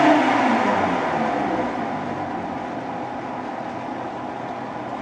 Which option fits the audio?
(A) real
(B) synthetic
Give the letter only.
A